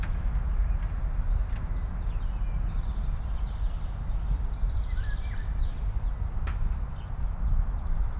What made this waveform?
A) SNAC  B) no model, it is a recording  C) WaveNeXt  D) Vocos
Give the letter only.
B